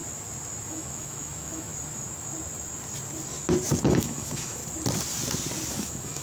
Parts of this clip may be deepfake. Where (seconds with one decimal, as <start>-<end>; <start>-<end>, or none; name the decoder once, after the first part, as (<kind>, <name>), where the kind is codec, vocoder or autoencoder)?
0.7-1.7 (autoencoder, DAC-VAE); 3.8-4.6; 5.7-6.2